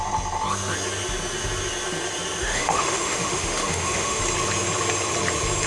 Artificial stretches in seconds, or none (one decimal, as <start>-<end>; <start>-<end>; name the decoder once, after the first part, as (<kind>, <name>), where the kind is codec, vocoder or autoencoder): 2.4-4.2 (autoencoder, DAC-VAE)